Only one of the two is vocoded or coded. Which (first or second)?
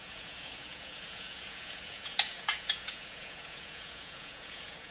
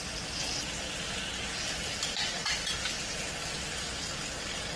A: first